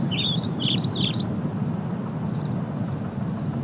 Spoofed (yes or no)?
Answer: yes